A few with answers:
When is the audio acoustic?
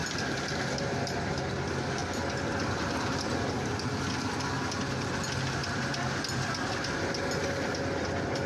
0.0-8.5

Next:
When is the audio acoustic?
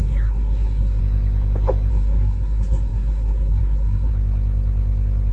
1.0-1.9; 4.1-5.3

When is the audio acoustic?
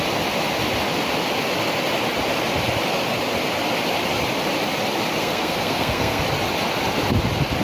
0.0-5.2; 6.2-7.6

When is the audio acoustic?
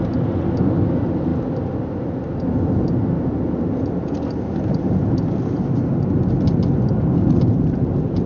0.0-8.3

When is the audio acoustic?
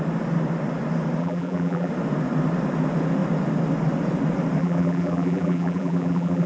0.0-1.2; 1.9-4.6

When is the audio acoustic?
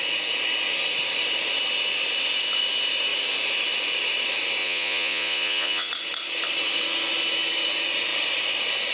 0.0-4.6; 5.9-8.9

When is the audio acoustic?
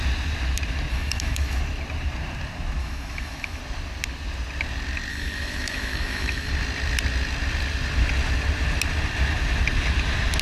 0.0-0.9; 1.6-2.8; 3.6-5.1; 6.5-10.4